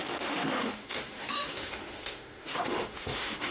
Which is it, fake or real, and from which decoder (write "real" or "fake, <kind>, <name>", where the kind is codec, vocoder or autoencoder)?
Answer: fake, autoencoder, DAC-VAE